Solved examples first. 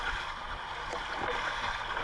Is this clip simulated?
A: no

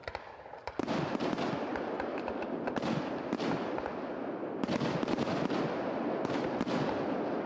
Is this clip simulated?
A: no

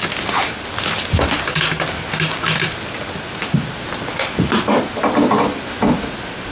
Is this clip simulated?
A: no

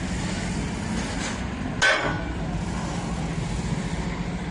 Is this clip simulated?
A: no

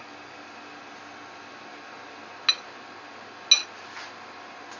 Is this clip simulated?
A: no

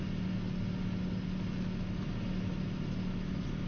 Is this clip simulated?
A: no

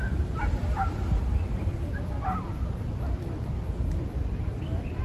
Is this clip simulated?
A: no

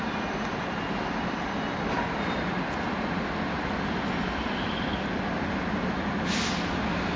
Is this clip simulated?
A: no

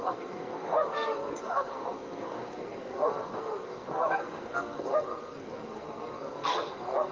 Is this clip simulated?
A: yes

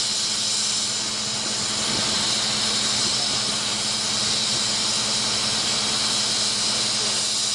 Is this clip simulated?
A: no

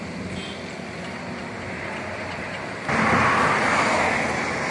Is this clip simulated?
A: no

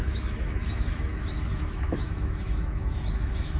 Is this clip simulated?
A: yes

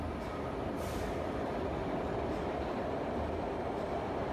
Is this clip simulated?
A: no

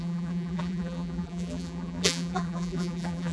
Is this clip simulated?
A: yes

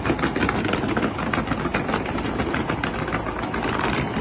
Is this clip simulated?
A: no